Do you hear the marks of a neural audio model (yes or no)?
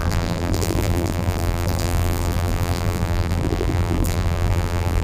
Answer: yes